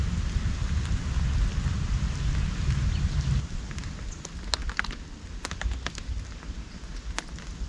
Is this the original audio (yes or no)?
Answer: yes